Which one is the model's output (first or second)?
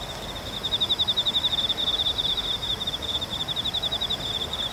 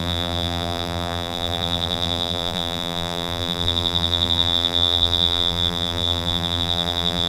second